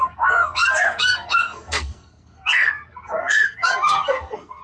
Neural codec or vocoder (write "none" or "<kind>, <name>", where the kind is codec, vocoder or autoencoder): codec, SNAC